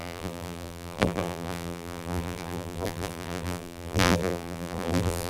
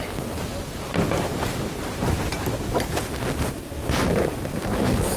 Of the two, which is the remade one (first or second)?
first